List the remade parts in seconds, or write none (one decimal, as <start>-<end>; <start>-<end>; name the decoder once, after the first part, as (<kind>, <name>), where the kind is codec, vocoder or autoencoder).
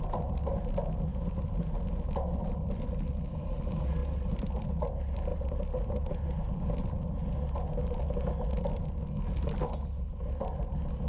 none